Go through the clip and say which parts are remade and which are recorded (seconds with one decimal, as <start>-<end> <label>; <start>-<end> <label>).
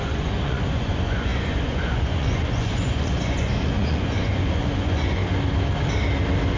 0.0-5.2 remade; 5.2-6.6 recorded